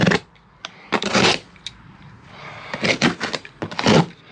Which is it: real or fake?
real